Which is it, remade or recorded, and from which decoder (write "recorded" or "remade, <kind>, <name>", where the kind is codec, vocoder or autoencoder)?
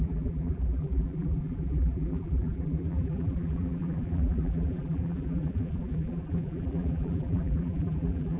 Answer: remade, vocoder, BigVGAN v2